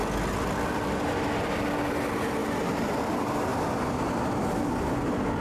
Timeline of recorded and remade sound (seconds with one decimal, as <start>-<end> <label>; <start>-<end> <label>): 0.0-2.4 recorded; 2.4-3.1 remade; 3.1-5.4 recorded